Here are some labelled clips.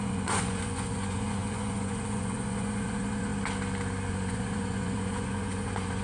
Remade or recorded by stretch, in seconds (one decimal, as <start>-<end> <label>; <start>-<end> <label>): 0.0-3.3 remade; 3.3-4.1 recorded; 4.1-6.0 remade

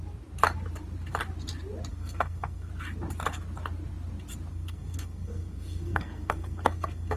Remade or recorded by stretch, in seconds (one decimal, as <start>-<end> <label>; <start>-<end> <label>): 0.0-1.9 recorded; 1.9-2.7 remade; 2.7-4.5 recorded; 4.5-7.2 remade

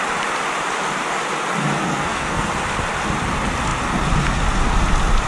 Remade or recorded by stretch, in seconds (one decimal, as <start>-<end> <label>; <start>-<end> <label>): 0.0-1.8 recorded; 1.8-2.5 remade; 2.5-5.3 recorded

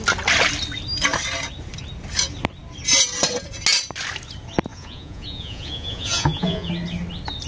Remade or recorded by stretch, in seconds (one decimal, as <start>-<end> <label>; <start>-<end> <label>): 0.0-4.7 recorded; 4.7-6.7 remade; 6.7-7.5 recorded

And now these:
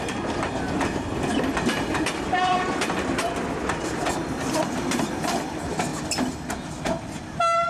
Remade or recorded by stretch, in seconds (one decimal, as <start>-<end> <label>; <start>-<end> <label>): 0.0-5.9 remade; 5.9-7.0 recorded; 7.0-7.7 remade

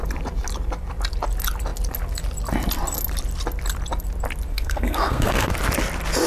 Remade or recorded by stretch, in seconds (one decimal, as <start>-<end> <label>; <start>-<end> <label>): 0.0-4.5 recorded; 4.5-5.5 remade; 5.5-6.3 recorded

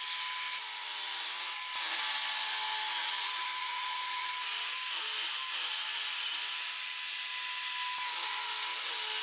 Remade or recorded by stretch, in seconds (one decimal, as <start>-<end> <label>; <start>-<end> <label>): 0.0-3.0 recorded; 3.0-4.3 remade; 4.3-9.2 recorded